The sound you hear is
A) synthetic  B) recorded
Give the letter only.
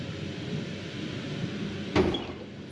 B